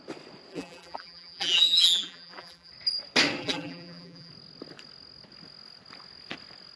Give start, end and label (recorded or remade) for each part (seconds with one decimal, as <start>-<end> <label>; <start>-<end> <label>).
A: 0.0-0.5 recorded; 0.5-2.7 remade; 2.7-3.4 recorded; 3.4-4.3 remade; 4.3-6.8 recorded